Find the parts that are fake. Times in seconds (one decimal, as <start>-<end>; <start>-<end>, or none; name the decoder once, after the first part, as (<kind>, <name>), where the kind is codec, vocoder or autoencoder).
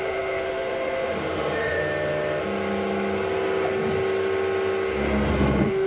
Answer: 0.0-1.8 (autoencoder, DAC-VAE); 5.3-5.9